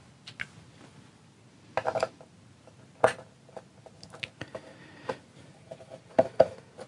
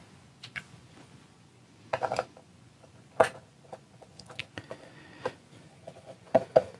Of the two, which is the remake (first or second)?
second